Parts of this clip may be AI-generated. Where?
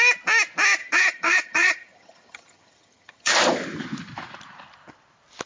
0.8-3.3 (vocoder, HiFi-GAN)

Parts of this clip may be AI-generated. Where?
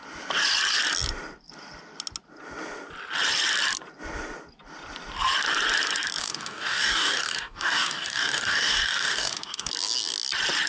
6.2-9.7 (codec, DAC)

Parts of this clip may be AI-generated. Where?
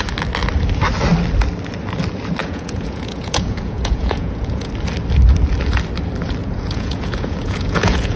2.4-4.7 (vocoder, Vocos); 6.4-8.2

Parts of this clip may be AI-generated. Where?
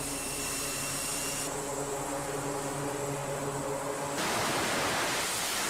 1.2-1.7 (vocoder, Vocos)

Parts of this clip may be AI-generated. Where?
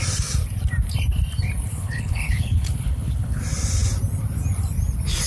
1.7-3.4 (codec, HILCodec)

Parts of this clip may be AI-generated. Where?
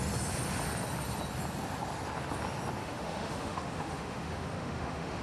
2.8-5.2 (autoencoder, DAC-VAE)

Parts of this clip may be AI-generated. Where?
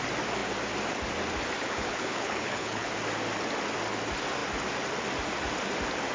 1.6-2.9 (codec, HILCodec)